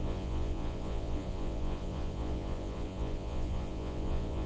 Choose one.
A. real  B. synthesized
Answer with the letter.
B